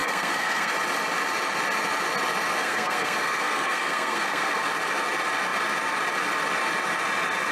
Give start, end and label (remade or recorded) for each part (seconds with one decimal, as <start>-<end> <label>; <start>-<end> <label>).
0.0-0.7 remade; 0.7-2.6 recorded; 2.6-4.6 remade; 4.6-7.5 recorded